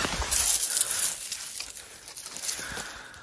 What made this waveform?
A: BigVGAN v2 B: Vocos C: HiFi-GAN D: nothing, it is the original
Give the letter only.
D